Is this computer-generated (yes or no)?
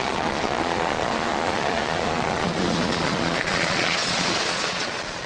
yes